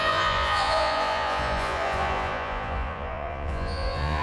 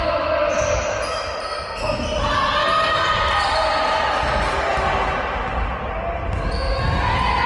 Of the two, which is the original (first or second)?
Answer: second